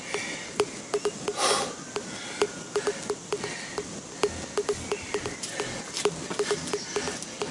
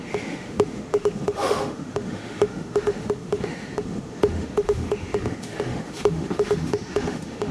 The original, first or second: first